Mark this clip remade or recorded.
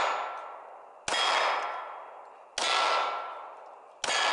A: recorded